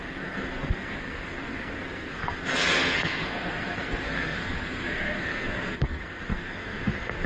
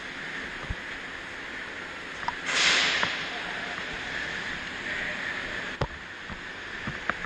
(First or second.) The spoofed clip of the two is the first